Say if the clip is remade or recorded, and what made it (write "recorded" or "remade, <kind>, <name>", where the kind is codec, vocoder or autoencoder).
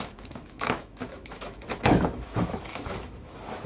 remade, autoencoder, DAC-VAE